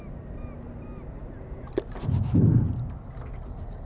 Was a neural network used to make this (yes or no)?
no